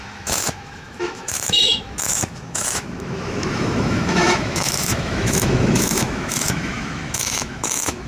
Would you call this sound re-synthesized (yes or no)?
yes